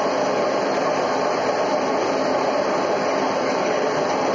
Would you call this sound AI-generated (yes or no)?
no